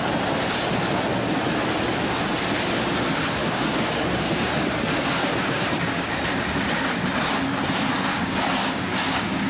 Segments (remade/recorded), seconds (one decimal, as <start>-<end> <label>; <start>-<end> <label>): 0.0-3.4 recorded; 3.4-4.5 remade; 4.5-5.2 recorded; 5.2-6.1 remade; 6.1-8.1 recorded; 8.1-9.5 remade